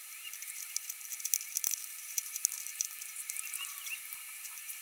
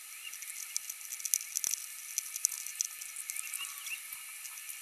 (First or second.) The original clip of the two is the second